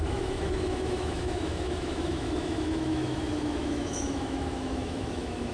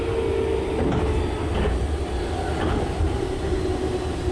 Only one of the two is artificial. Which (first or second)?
first